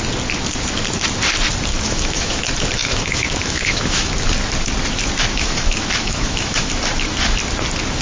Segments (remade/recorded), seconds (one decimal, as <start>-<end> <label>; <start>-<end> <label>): 0.0-1.7 recorded; 1.7-2.4 remade; 2.4-2.8 recorded; 2.8-4.1 remade; 4.1-5.3 recorded; 5.3-6.7 remade; 6.7-8.0 recorded